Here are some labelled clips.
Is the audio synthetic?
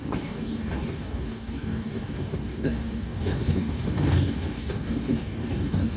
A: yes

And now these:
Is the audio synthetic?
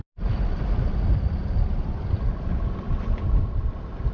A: no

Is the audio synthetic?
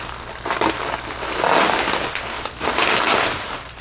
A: no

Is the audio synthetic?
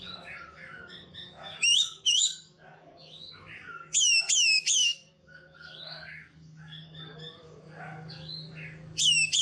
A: yes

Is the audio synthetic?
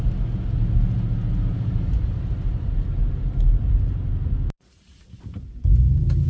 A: no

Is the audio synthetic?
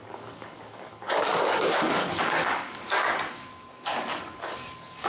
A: yes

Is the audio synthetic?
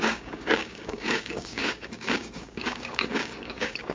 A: yes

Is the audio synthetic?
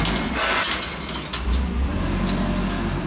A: no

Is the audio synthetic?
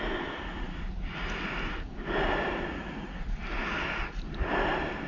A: no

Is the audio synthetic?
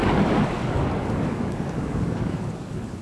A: yes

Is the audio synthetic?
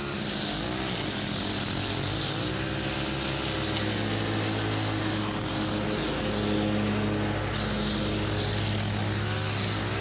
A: no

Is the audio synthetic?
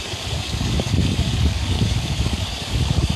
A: yes